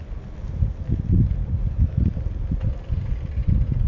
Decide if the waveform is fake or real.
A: real